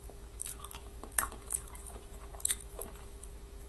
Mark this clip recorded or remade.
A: remade